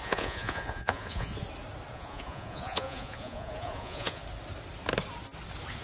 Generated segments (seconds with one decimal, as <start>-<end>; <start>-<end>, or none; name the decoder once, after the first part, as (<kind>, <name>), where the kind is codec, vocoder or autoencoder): 0.0-1.3 (vocoder, Vocos); 1.9-4.2